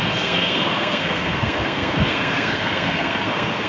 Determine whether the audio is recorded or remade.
remade